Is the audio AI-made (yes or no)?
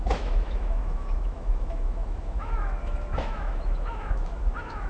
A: yes